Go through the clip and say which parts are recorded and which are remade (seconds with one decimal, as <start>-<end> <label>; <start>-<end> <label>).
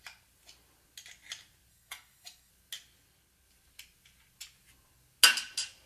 0.0-1.7 recorded; 1.7-2.5 remade; 2.5-5.9 recorded